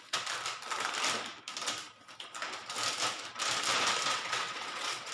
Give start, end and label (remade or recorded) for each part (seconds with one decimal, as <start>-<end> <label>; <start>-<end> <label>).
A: 0.0-4.1 recorded; 4.1-5.1 remade